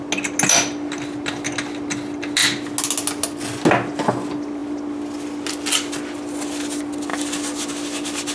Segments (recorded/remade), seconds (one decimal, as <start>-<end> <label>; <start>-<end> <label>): 0.0-8.3 recorded